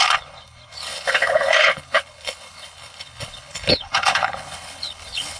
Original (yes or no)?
no